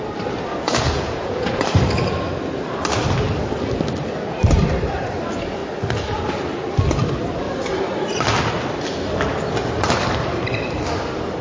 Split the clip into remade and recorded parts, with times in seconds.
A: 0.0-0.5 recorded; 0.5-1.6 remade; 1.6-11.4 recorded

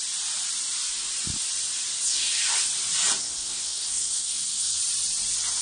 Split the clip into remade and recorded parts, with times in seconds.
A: 0.0-3.2 recorded; 3.2-4.8 remade; 4.8-5.6 recorded

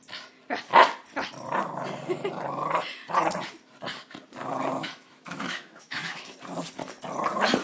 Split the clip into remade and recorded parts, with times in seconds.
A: 0.0-4.8 recorded; 4.8-6.3 remade; 6.3-7.6 recorded

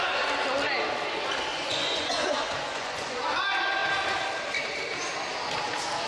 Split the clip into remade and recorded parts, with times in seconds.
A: 0.0-1.5 recorded; 1.5-3.2 remade; 3.2-6.1 recorded

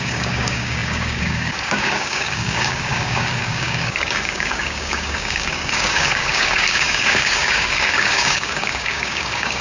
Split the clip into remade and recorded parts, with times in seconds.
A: 0.0-9.6 remade

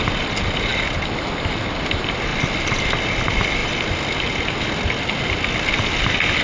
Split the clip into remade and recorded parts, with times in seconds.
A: 0.0-0.7 recorded; 0.7-1.6 remade; 1.6-2.3 recorded; 2.3-3.2 remade; 3.2-6.4 recorded